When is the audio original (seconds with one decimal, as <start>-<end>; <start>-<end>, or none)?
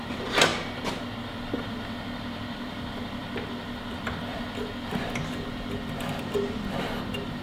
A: 0.5-1.2